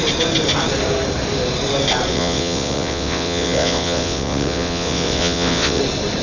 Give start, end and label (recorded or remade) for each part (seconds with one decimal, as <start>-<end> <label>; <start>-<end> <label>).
0.0-2.1 recorded; 2.1-5.8 remade; 5.8-6.2 recorded